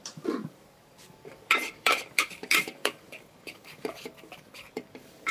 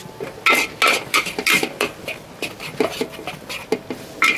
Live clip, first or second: second